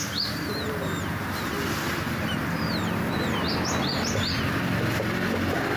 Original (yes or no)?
yes